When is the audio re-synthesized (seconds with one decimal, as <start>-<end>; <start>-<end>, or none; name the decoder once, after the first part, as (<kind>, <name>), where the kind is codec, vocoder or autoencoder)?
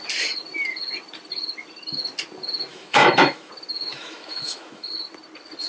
2.7-3.5 (autoencoder, DAC-VAE); 3.9-4.9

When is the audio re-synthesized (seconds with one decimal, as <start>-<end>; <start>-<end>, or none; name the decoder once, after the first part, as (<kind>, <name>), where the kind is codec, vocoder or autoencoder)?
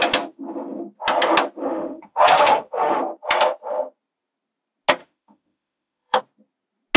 1.6-3.0 (autoencoder, DAC-VAE); 5.0-6.2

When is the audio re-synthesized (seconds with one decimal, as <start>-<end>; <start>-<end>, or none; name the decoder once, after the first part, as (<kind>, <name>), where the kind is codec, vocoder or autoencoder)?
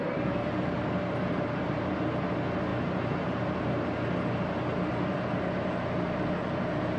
none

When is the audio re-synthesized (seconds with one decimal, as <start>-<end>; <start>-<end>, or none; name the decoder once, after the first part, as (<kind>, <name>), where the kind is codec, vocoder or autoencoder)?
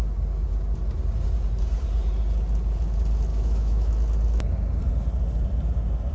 3.3-3.9 (autoencoder, DAC-VAE)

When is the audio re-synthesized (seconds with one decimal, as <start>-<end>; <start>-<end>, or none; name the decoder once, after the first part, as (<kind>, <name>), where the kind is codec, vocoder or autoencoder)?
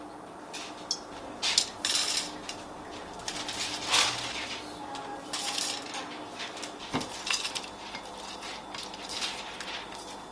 none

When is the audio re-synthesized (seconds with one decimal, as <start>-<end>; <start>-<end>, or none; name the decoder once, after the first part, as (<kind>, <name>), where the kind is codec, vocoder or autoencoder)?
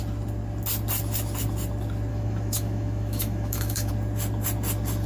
2.1-3.9 (autoencoder, DAC-VAE)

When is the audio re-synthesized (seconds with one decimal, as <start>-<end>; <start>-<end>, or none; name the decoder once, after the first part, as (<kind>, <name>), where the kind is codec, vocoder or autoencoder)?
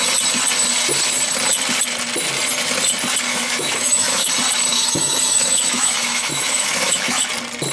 3.3-4.3 (autoencoder, DAC-VAE); 4.7-7.3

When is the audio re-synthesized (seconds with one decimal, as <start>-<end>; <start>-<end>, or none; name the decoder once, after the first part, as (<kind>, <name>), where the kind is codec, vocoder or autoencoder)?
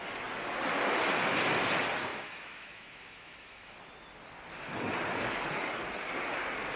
2.1-3.7 (autoencoder, DAC-VAE)